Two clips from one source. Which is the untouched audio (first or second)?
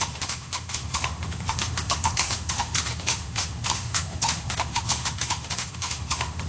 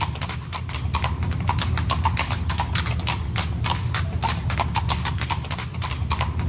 second